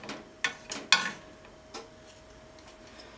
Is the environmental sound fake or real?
real